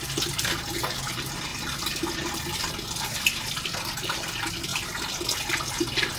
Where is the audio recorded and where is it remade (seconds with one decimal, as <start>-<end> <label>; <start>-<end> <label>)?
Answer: 0.0-6.2 recorded